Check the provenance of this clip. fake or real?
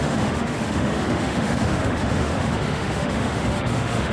fake